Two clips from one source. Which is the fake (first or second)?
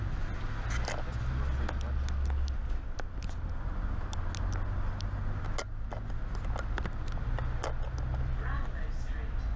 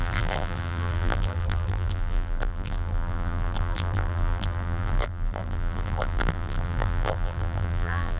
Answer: second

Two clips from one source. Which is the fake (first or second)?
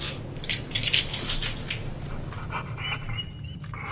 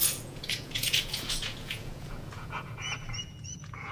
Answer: second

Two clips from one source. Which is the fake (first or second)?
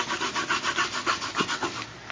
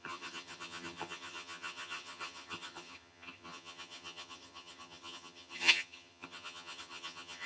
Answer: second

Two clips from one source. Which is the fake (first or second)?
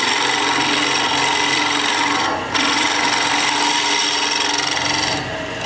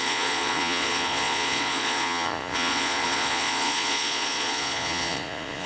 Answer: second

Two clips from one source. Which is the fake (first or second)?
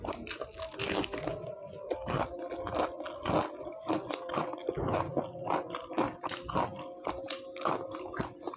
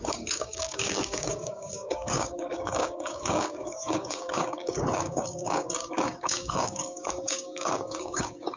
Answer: second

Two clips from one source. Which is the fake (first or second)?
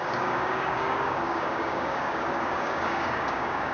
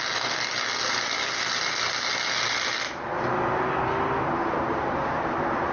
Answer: first